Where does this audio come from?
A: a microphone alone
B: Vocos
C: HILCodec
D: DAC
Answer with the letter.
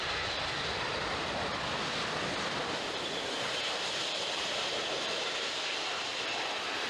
A